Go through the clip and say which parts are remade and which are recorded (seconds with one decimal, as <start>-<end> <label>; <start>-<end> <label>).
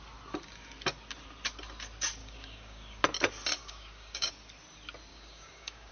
0.0-2.2 recorded; 2.2-3.0 remade; 3.0-3.6 recorded; 3.6-4.3 remade; 4.3-5.1 recorded; 5.1-5.9 remade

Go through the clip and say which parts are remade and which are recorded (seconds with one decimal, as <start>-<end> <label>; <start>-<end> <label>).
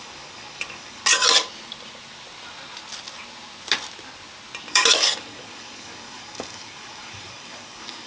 0.0-1.0 remade; 1.0-4.7 recorded; 4.7-8.1 remade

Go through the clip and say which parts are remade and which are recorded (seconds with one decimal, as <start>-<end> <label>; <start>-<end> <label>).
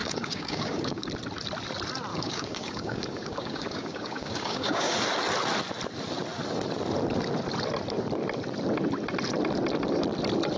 0.0-1.1 remade; 1.1-2.1 recorded; 2.1-4.9 remade; 4.9-10.6 recorded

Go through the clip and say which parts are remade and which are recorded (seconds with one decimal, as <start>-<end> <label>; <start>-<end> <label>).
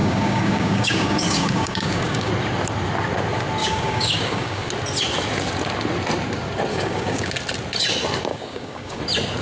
0.0-2.3 remade; 2.3-3.6 recorded; 3.6-4.7 remade; 4.7-6.7 recorded; 6.7-7.3 remade; 7.3-8.3 recorded; 8.3-9.0 remade; 9.0-9.4 recorded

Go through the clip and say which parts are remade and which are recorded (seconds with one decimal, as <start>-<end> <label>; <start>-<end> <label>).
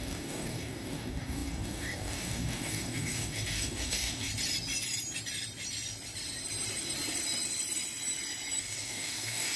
0.0-4.3 remade; 4.3-8.6 recorded; 8.6-9.6 remade